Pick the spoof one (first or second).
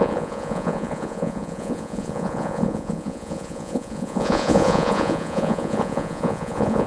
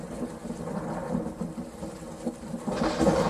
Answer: first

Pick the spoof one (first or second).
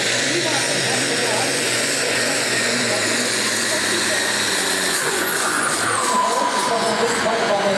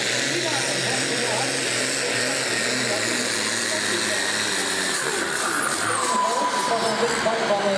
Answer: first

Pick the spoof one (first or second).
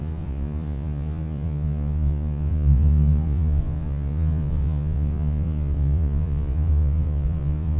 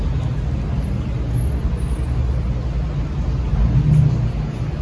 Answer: first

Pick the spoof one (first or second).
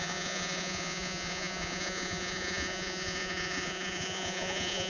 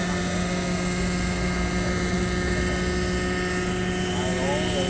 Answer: first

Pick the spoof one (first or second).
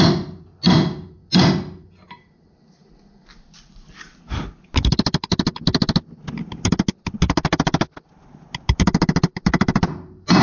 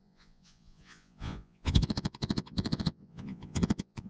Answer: second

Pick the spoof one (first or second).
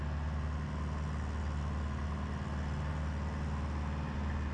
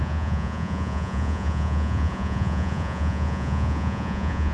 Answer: second